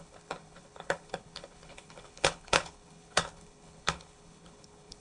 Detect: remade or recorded remade